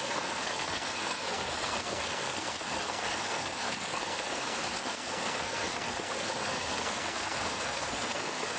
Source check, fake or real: fake